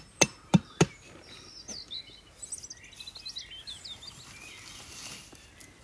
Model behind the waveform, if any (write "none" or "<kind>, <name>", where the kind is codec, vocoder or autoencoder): none